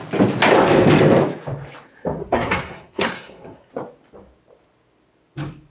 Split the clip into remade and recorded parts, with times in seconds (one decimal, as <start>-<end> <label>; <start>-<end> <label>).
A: 0.0-2.2 recorded; 2.2-3.7 remade; 3.7-5.7 recorded